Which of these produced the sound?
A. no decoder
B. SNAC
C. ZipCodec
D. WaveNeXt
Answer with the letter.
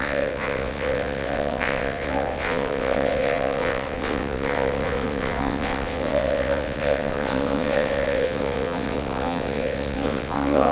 D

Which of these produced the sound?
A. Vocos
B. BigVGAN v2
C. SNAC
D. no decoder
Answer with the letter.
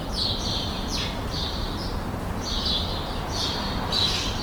D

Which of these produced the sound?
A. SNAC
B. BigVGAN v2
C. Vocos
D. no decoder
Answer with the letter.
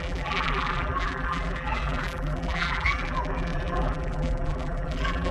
B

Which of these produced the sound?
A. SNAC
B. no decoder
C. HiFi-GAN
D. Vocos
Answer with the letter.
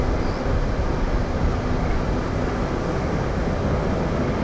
B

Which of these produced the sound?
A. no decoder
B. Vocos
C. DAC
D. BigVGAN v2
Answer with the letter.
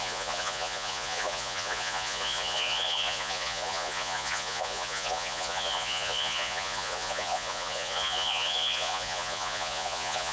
B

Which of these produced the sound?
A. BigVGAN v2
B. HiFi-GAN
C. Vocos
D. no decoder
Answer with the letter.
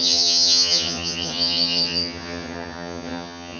B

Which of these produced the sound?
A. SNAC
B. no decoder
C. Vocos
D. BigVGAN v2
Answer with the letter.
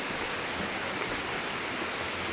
B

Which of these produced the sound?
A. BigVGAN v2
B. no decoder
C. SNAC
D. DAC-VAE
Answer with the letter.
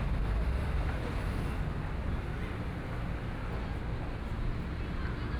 B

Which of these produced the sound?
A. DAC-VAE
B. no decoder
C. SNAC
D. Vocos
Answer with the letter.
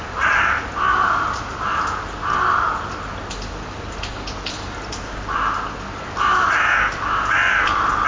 B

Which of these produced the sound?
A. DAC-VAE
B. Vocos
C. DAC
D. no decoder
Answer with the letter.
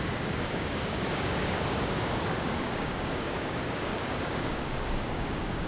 C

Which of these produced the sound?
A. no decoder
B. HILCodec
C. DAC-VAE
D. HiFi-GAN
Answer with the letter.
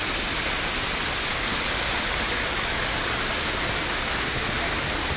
A